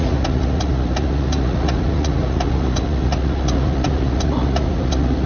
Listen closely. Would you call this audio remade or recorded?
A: remade